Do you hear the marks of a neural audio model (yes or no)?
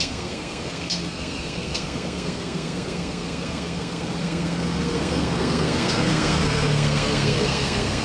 yes